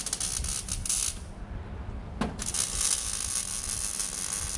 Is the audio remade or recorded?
recorded